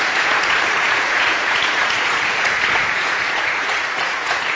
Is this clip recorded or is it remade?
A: remade